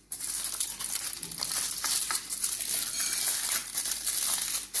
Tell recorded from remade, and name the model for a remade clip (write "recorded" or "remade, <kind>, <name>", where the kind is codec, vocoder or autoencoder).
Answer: recorded